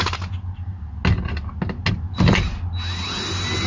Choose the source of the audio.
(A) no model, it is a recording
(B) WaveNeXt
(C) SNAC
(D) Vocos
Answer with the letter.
A